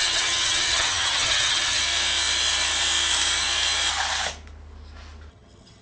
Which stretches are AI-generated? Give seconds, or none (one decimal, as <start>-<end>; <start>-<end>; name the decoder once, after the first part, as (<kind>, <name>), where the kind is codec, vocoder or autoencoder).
0.0-1.8 (vocoder, HiFi-GAN); 5.3-5.8

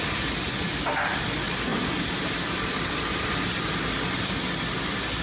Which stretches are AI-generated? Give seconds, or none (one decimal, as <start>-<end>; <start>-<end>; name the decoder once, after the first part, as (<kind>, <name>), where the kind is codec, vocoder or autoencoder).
none